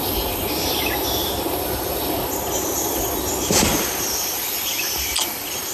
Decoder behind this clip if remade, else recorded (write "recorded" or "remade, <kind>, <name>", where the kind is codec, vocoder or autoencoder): recorded